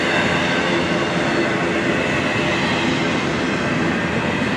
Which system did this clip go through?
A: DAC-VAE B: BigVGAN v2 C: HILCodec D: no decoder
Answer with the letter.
D